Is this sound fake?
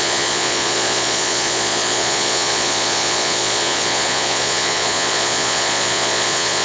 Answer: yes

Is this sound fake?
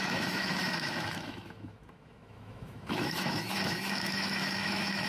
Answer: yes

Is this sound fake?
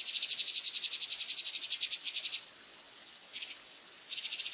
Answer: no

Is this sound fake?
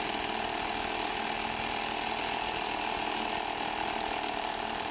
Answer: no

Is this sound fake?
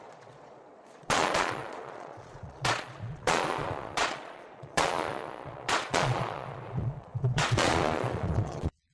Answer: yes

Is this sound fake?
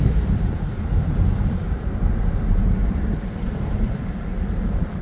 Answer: yes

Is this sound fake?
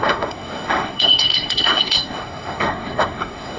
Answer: yes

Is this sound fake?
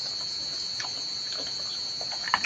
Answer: no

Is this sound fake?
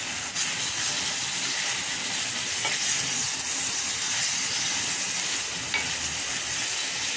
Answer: no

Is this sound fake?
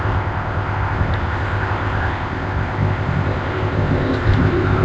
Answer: yes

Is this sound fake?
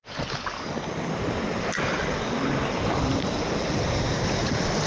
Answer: no